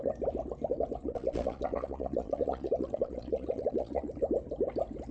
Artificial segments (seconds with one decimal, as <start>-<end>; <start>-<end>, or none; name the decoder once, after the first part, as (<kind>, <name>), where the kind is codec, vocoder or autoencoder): 1.0-4.1 (vocoder, Vocos)